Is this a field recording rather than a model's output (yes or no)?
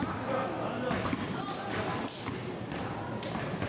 yes